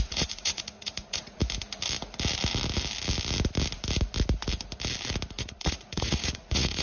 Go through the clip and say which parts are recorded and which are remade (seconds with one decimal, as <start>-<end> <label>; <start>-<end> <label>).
0.0-1.4 remade; 1.4-5.4 recorded; 5.4-6.8 remade